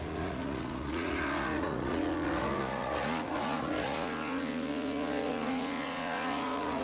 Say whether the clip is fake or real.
fake